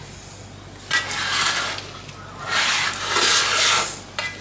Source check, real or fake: real